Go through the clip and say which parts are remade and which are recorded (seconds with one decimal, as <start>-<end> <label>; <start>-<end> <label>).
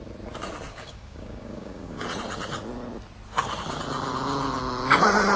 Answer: 0.0-0.7 recorded; 0.7-2.0 remade; 2.0-5.4 recorded